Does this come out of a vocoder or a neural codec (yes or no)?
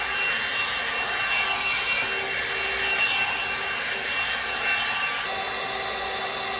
no